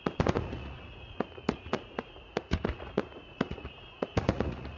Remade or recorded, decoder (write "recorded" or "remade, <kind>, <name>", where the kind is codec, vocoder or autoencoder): remade, vocoder, Vocos